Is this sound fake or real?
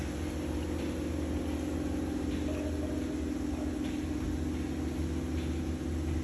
real